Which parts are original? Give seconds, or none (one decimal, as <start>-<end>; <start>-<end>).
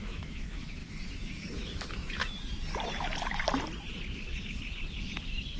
2.2-5.6